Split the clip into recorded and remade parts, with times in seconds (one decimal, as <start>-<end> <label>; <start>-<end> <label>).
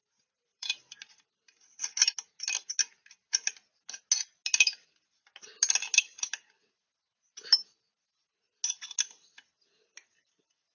0.0-0.9 remade; 0.9-10.7 recorded